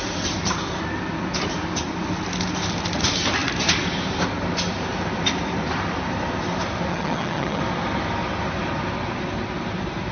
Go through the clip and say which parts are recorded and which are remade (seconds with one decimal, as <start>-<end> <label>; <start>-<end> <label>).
0.0-6.9 recorded; 6.9-7.6 remade; 7.6-10.1 recorded